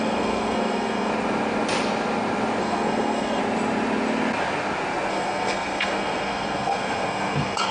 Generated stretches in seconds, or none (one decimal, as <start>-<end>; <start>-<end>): 0.0-1.1; 2.6-3.4; 5.1-7.7